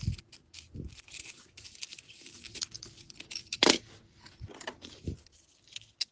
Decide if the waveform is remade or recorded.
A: recorded